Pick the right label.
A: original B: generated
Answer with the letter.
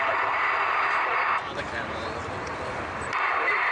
B